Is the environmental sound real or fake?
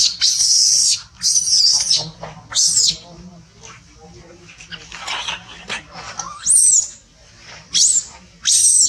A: real